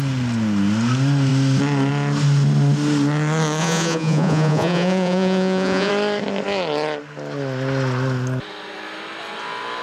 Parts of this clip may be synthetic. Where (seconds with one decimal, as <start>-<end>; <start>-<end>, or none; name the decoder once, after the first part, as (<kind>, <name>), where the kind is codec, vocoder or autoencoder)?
3.6-5.9 (vocoder, Vocos)